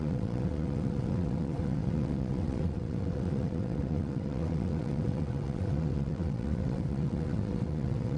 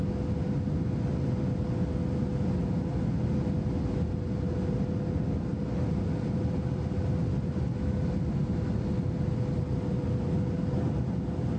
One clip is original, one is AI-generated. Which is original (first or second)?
second